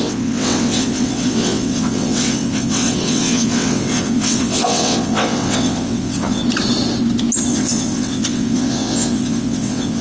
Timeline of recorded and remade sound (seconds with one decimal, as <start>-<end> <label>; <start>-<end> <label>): 0.0-6.4 remade; 6.4-7.5 recorded; 7.5-10.0 remade